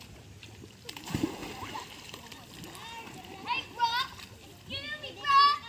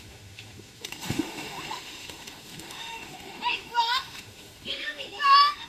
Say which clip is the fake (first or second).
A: second